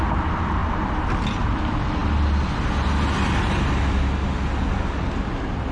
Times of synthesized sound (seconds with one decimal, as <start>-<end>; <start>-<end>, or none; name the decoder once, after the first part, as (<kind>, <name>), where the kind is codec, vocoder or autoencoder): none